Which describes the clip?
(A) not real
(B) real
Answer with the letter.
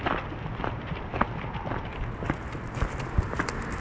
B